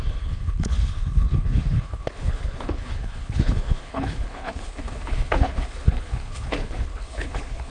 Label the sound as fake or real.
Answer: fake